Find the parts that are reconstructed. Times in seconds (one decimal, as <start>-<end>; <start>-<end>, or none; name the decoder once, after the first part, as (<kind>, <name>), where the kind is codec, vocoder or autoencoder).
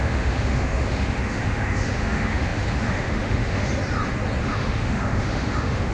0.0-3.7 (autoencoder, DAC-VAE); 4.4-5.9